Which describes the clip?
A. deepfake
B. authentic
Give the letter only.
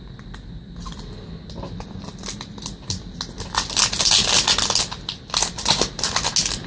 B